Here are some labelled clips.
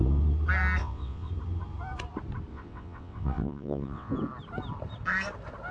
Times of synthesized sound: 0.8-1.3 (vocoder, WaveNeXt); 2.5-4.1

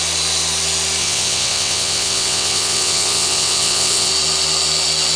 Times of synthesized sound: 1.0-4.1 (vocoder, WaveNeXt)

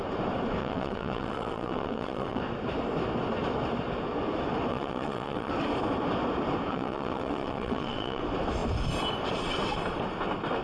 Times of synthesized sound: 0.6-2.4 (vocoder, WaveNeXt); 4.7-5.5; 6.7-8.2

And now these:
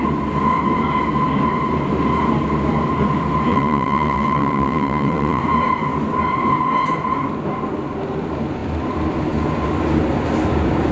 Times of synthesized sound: 3.5-5.4 (vocoder, WaveNeXt)

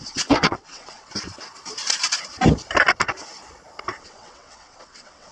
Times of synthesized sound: 0.0-1.1 (vocoder, WaveNeXt); 4.0-5.3

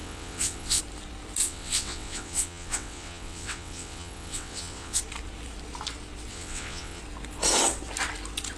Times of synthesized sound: 0.0-0.8 (vocoder, WaveNeXt); 1.4-5.0; 6.3-7.0